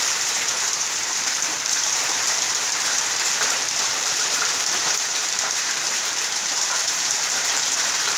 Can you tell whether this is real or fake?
fake